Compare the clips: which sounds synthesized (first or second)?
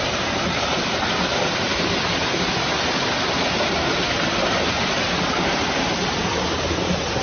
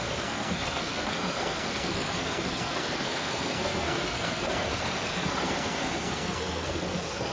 second